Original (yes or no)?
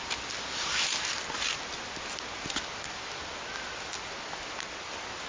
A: yes